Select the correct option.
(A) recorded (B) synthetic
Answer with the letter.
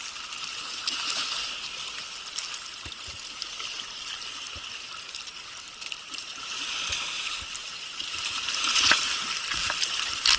A